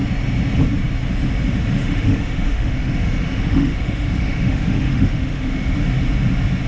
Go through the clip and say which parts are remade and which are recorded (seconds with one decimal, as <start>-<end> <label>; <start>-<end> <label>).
0.0-1.8 recorded; 1.8-5.8 remade; 5.8-6.7 recorded